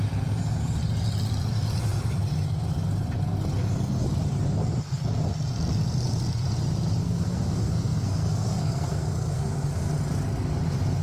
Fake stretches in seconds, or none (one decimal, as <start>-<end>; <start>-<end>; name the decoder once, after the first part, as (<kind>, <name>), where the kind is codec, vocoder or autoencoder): 7.0-9.9 (codec, SNAC)